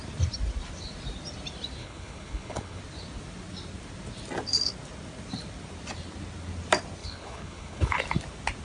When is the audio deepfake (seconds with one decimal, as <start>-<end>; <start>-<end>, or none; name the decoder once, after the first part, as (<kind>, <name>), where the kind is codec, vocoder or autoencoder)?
1.8-2.8 (codec, HILCodec); 7.0-8.0